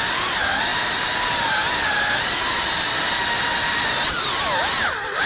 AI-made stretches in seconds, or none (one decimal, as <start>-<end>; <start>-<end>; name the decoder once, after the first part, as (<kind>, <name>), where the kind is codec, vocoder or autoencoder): none